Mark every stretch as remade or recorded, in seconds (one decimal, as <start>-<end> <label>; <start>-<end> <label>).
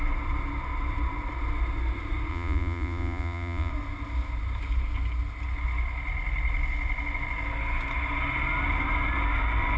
0.0-2.3 recorded; 2.3-3.7 remade; 3.7-9.8 recorded